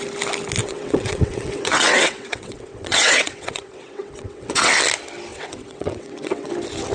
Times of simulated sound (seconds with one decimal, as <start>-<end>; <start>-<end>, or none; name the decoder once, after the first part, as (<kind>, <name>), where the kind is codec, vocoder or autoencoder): 0.6-4.7 (vocoder, WaveNeXt); 5.3-6.5